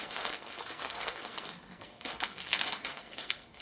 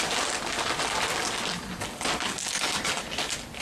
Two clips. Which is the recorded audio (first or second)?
second